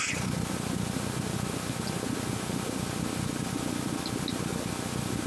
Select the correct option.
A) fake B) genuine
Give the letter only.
B